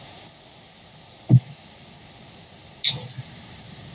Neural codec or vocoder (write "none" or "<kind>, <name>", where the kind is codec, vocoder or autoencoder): none